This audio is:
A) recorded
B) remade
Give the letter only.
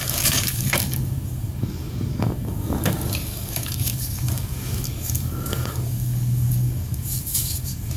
B